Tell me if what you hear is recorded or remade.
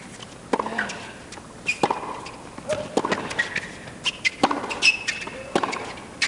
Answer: recorded